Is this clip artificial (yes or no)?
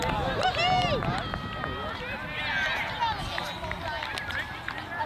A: no